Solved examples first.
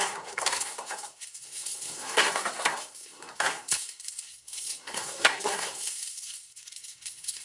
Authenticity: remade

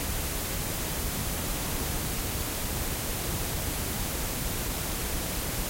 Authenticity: remade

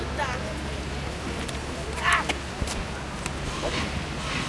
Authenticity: recorded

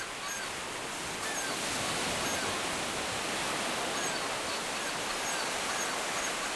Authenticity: recorded